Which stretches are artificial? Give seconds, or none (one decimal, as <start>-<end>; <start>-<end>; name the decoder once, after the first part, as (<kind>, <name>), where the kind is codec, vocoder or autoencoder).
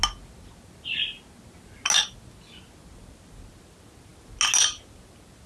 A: none